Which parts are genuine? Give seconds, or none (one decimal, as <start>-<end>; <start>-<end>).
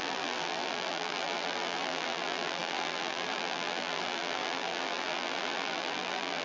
none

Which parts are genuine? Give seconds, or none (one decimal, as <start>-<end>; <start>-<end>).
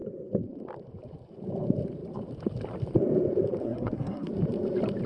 0.0-3.6; 4.3-5.1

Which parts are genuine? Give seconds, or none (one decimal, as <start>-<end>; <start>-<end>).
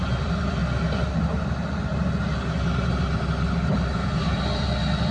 0.6-1.5; 1.9-3.7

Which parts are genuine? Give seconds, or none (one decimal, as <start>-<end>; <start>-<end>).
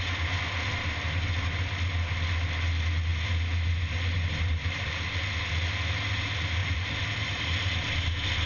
0.0-4.5; 5.0-6.6; 7.8-8.5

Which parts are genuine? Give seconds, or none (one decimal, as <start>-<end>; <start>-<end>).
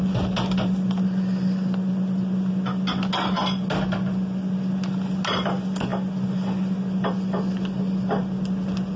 0.0-9.0